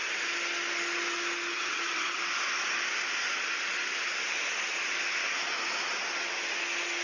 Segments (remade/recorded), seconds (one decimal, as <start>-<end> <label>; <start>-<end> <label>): 0.0-1.5 recorded; 1.5-2.2 remade; 2.2-7.0 recorded